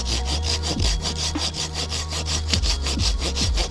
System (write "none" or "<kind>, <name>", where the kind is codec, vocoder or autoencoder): none